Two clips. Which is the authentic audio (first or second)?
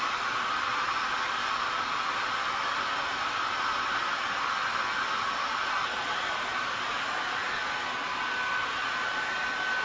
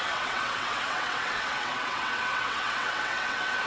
first